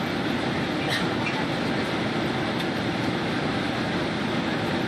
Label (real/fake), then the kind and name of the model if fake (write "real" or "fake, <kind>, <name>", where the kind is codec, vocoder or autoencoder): real